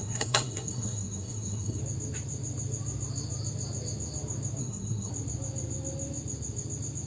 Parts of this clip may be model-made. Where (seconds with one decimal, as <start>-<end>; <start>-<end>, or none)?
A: 0.0-1.8; 4.6-5.1